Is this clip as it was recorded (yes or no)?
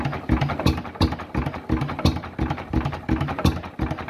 yes